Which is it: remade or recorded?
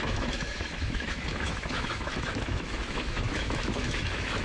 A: remade